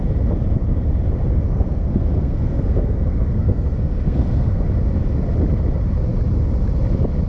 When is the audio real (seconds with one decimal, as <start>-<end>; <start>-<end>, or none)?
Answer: 0.0-1.3; 4.6-7.3